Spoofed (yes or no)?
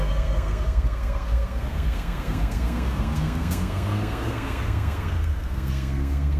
yes